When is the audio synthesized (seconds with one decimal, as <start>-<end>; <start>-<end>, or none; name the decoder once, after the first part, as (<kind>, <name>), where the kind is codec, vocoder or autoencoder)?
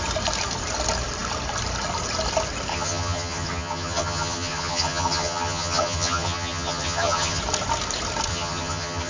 2.7-7.4 (vocoder, HiFi-GAN); 8.3-9.1